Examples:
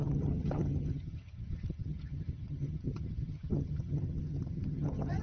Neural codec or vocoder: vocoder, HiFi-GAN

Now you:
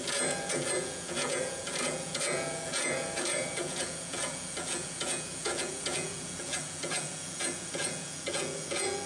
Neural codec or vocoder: vocoder, Vocos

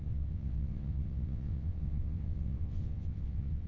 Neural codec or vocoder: vocoder, WaveNeXt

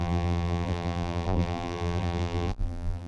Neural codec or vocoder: vocoder, BigVGAN v2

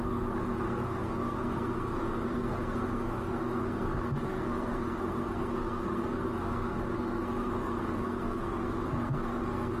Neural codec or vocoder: codec, SNAC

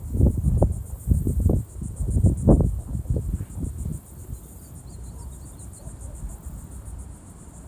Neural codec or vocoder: vocoder, BigVGAN v2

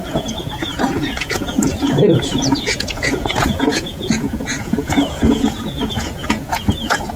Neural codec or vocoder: vocoder, Vocos